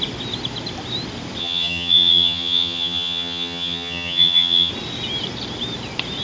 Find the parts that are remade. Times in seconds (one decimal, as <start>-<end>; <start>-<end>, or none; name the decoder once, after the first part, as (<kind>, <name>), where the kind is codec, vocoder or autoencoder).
1.4-4.7 (vocoder, HiFi-GAN)

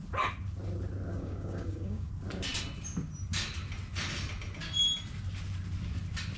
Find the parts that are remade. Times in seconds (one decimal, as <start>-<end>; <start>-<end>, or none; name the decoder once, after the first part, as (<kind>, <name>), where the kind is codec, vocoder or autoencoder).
1.1-2.1 (codec, DAC)

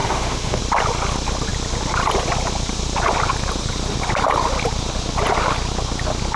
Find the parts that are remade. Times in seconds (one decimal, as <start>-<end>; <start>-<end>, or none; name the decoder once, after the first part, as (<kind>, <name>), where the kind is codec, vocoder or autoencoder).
0.0-0.6 (autoencoder, DAC-VAE)

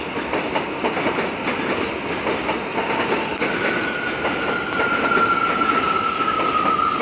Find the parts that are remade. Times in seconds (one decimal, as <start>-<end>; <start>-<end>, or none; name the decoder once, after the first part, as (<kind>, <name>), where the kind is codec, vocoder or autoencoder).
none